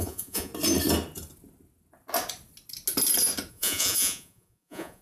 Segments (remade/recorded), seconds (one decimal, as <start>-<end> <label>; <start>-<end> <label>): 0.0-0.5 remade; 0.5-3.5 recorded; 3.5-5.0 remade